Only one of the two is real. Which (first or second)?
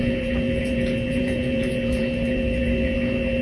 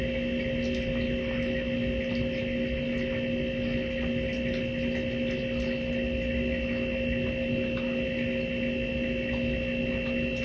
second